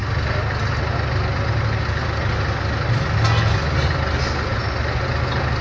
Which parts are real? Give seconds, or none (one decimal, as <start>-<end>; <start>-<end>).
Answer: 0.0-5.6